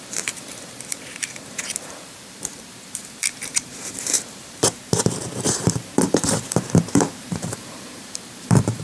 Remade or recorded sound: remade